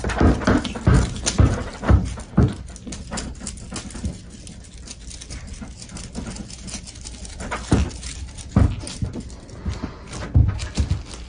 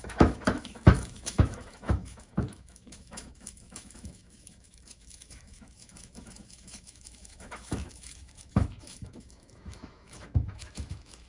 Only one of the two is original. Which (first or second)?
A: first